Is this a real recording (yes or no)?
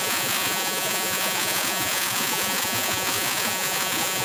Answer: no